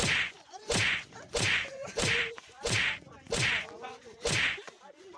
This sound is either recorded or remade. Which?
remade